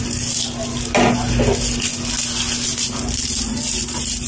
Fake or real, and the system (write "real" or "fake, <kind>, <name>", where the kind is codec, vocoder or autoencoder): real